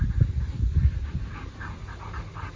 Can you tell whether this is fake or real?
real